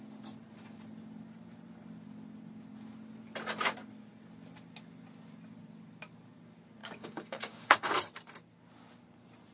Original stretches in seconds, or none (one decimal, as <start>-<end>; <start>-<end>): 0.0-6.8; 8.0-9.5